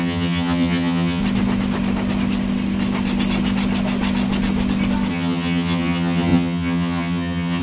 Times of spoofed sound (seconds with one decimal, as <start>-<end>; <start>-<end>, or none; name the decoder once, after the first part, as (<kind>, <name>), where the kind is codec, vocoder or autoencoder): 0.0-1.2 (vocoder, HiFi-GAN); 5.1-7.6